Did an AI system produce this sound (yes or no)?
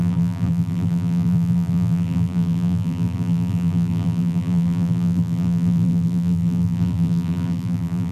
yes